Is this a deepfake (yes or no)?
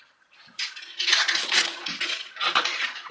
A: yes